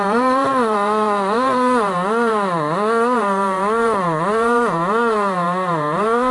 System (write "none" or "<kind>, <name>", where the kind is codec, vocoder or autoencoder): vocoder, BigVGAN v2